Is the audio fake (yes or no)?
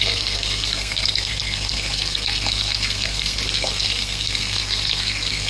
yes